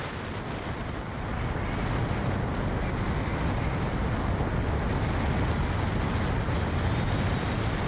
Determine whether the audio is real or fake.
real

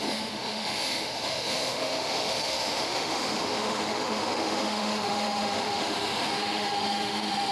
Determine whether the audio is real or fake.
fake